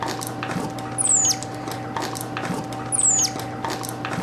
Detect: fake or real real